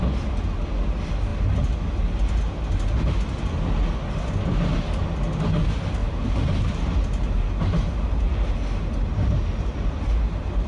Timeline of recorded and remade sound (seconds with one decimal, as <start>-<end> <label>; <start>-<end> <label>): 0.0-6.0 recorded; 6.0-10.7 remade